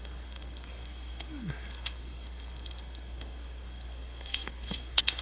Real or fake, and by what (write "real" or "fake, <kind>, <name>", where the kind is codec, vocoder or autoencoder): fake, codec, SNAC